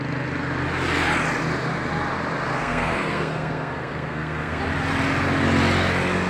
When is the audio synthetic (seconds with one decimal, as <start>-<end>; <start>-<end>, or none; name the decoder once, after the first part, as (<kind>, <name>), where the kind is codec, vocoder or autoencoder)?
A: 2.5-4.6 (codec, SNAC)